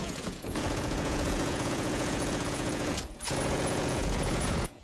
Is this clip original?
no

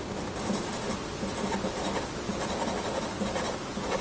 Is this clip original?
yes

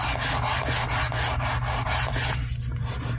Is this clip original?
yes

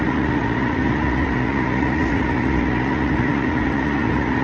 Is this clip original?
no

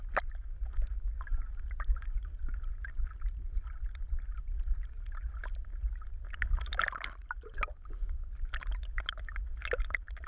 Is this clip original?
yes